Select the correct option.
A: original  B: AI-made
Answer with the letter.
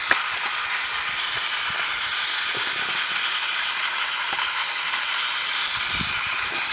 A